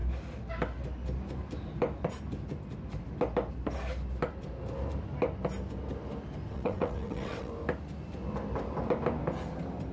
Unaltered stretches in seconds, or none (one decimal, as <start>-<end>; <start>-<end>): 0.0-6.5; 7.5-9.9